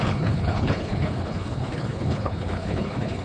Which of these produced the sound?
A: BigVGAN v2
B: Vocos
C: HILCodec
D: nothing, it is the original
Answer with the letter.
C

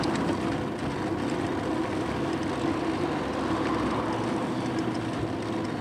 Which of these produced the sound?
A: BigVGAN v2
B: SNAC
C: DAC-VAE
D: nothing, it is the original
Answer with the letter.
D